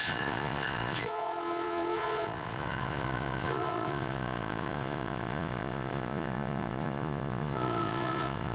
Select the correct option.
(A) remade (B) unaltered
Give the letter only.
A